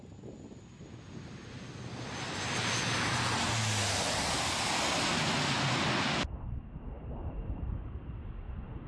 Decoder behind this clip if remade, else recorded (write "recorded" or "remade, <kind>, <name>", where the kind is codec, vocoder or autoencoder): recorded